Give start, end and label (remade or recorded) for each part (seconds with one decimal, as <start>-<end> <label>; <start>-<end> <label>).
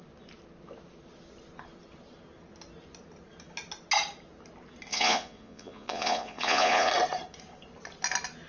0.0-4.9 recorded; 4.9-6.9 remade; 6.9-8.5 recorded